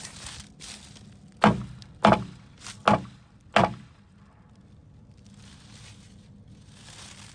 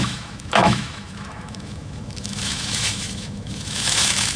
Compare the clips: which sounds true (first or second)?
first